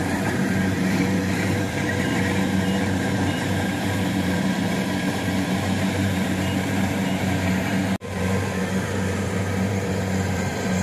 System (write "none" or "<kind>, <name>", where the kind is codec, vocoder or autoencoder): vocoder, BigVGAN v2